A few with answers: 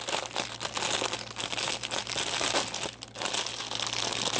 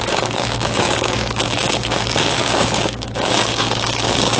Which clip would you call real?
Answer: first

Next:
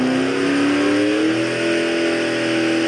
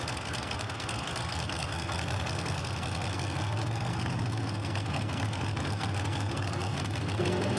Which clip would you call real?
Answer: first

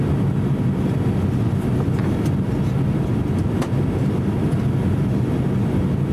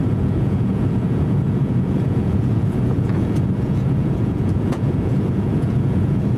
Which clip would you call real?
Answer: first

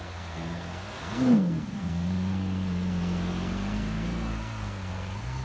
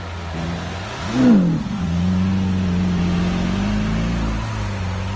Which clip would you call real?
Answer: second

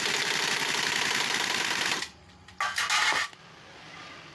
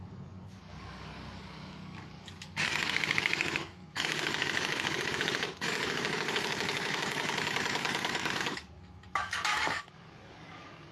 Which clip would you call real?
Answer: first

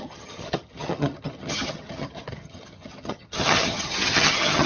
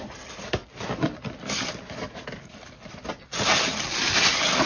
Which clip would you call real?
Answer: second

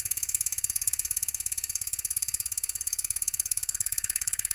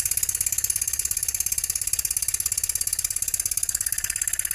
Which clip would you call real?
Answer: second